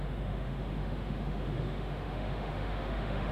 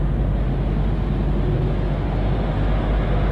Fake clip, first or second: first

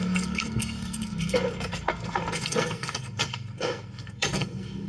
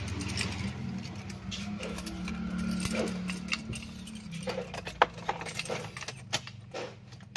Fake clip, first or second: first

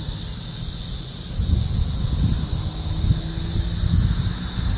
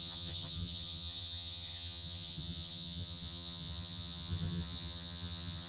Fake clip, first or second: second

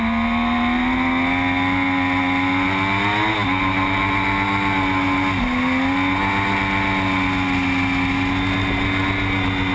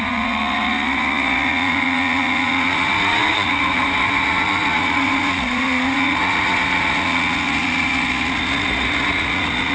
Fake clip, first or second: second